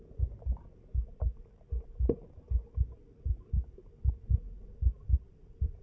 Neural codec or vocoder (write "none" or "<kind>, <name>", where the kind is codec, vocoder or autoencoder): none